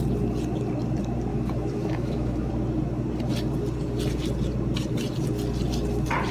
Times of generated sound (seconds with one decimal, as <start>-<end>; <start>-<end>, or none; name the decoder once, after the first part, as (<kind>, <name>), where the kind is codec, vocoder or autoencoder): 1.3-2.5 (autoencoder, DAC-VAE)